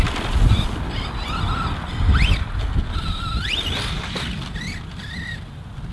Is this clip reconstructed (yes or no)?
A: no